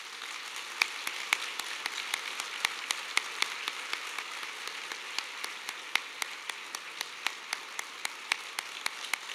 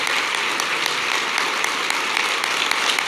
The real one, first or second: first